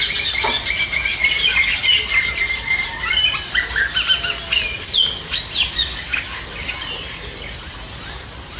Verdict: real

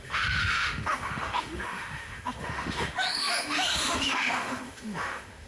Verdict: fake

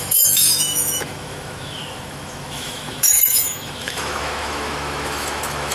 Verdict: fake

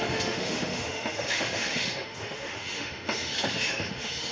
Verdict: fake